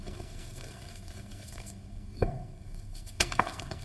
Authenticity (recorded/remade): remade